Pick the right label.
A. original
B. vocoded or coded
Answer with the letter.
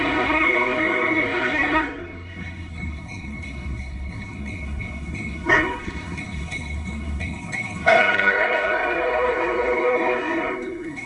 B